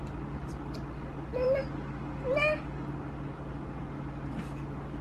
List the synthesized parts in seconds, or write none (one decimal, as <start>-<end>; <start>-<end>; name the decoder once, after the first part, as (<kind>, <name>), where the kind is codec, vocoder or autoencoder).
none